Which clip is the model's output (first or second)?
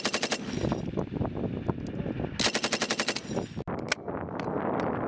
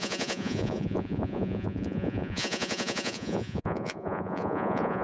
second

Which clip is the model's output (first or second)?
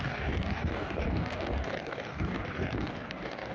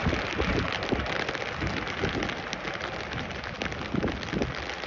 first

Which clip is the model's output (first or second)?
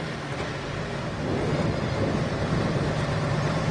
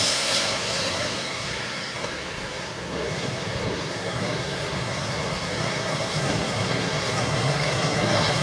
second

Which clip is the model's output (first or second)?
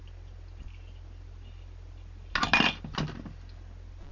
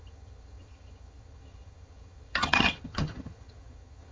second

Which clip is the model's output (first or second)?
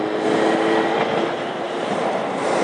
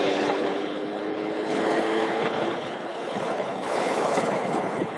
second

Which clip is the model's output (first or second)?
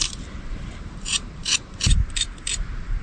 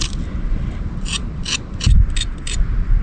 first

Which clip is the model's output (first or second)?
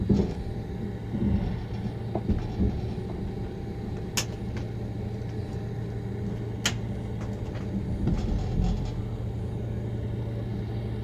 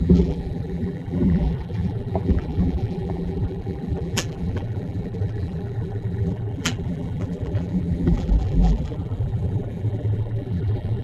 second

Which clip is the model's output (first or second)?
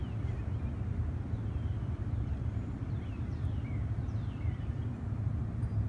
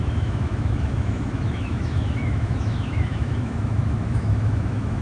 second